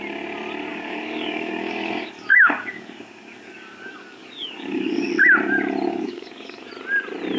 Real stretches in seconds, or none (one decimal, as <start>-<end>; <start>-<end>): 0.0-0.7; 5.1-5.9; 6.7-7.4